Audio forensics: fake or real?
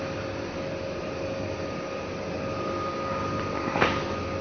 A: real